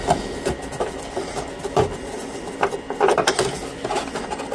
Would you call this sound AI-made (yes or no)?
no